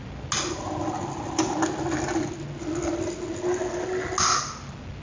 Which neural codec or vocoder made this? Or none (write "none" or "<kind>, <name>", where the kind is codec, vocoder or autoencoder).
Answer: none